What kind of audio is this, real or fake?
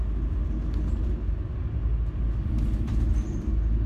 real